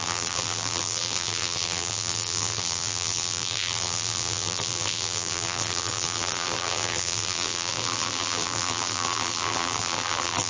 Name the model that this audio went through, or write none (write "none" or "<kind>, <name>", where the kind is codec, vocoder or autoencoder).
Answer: vocoder, BigVGAN v2